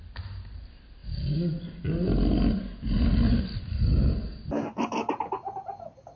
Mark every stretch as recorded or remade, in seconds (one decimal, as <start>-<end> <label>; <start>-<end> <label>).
0.0-6.2 recorded